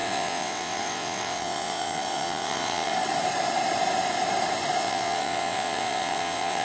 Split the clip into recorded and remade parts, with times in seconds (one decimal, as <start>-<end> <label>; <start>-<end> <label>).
0.0-2.9 remade; 2.9-4.8 recorded; 4.8-6.6 remade